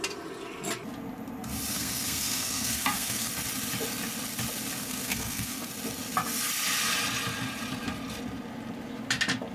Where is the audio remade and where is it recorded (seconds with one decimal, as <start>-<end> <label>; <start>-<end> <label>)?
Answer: 0.0-1.7 recorded; 1.7-3.3 remade; 3.3-4.8 recorded; 4.8-5.7 remade; 5.7-9.5 recorded